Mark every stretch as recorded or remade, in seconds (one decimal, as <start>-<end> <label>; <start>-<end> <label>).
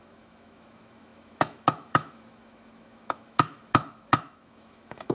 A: 0.0-5.1 remade